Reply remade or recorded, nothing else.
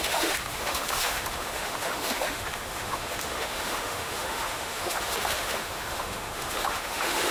remade